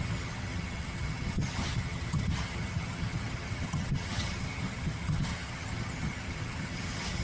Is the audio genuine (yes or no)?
no